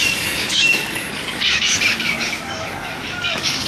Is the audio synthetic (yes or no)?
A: yes